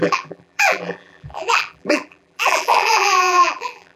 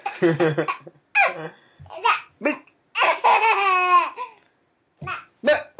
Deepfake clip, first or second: first